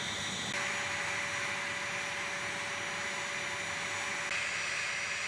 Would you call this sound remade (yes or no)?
no